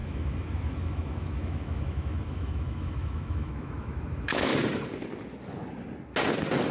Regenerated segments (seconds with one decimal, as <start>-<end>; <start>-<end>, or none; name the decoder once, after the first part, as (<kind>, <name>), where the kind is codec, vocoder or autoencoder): 0.0-4.5 (autoencoder, DAC-VAE)